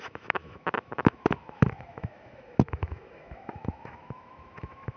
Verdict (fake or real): fake